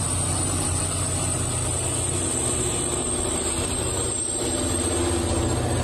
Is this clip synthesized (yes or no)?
no